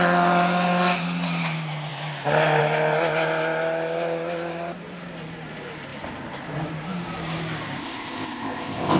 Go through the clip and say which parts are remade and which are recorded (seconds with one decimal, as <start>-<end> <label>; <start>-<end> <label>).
0.0-7.8 recorded; 7.8-9.0 remade